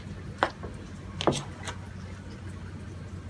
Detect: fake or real real